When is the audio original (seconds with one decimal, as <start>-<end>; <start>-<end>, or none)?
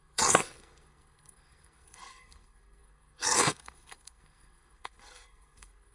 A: none